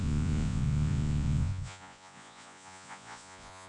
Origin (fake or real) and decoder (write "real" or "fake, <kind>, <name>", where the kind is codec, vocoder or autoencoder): fake, vocoder, Vocos